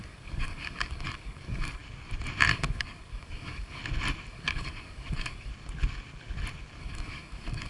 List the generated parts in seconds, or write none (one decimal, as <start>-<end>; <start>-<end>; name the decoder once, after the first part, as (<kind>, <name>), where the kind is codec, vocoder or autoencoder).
0.0-1.8 (codec, DAC); 2.5-3.8; 4.3-5.5; 6.8-7.7